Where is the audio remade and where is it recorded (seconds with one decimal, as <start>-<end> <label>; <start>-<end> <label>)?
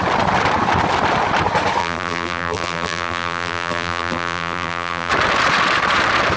0.0-1.8 recorded; 1.8-5.1 remade; 5.1-6.4 recorded